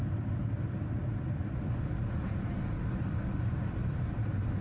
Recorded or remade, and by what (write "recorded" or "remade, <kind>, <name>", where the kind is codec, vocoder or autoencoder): recorded